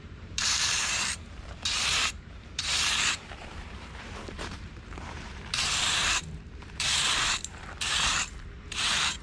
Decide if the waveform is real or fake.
fake